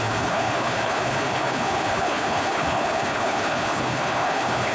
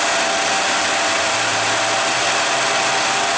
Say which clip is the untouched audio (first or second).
second